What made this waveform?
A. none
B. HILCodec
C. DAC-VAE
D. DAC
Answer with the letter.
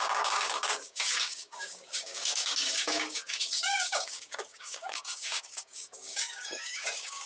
D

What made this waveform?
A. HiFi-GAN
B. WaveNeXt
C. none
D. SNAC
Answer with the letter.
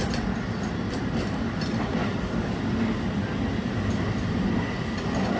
C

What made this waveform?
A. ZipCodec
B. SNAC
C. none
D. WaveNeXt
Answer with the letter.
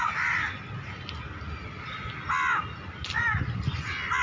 C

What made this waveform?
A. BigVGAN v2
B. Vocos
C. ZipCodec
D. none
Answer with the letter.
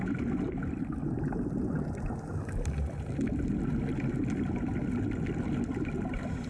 D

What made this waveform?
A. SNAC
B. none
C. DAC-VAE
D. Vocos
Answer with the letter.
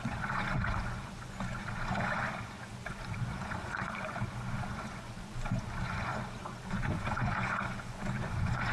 D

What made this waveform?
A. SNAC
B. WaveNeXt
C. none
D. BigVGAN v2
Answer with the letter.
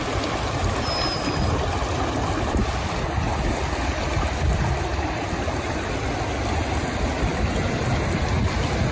C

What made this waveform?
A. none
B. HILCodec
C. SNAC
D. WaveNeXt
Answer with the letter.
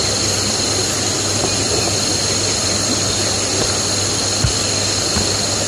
A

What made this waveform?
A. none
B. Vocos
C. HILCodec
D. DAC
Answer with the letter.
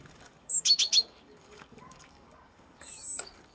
D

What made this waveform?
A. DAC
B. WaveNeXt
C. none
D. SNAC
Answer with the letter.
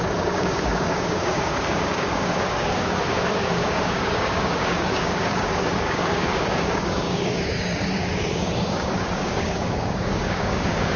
A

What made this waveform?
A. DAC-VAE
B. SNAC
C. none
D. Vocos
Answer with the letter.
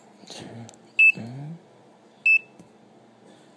C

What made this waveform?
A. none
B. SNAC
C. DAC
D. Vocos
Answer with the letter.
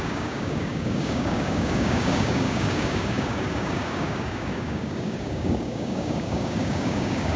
C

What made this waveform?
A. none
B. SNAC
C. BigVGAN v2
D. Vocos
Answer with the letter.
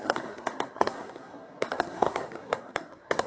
B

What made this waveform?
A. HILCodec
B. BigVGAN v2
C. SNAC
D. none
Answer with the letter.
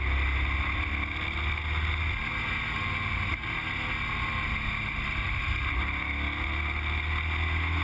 D